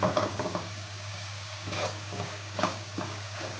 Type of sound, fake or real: fake